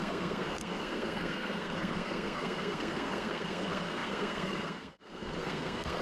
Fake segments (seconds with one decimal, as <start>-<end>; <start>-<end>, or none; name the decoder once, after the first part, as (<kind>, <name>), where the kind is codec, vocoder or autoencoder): 0.0-6.0 (codec, SNAC)